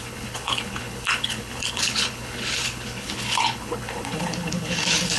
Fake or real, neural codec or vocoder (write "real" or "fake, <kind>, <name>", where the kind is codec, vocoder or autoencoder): fake, codec, HILCodec